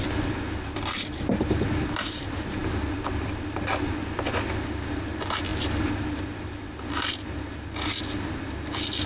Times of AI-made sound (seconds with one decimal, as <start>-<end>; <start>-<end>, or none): none